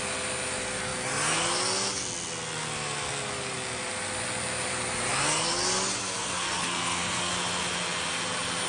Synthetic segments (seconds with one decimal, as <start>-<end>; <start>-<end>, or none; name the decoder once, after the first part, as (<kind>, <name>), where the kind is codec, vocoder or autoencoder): 6.0-7.3 (codec, SNAC)